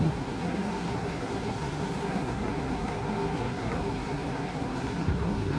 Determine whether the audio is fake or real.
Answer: fake